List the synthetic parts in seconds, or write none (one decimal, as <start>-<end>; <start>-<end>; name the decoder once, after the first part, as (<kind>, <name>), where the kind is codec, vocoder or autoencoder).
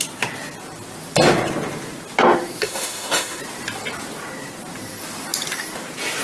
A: 2.6-3.4 (autoencoder, DAC-VAE)